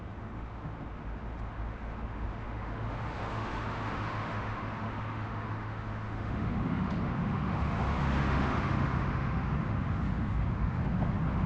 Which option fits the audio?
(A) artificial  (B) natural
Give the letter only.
A